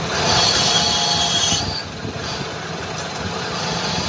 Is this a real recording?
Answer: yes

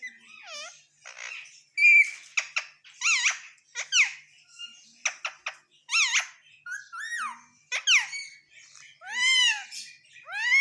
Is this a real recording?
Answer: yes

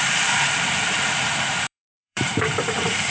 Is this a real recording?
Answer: no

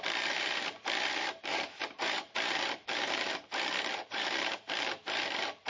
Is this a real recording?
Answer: no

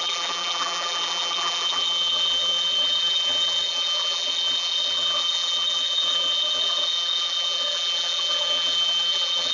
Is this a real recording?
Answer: no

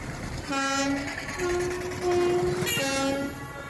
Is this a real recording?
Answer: yes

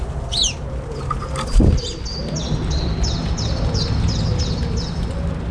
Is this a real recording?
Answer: yes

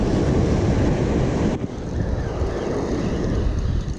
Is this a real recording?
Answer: yes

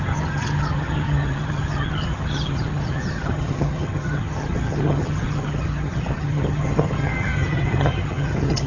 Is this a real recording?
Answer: no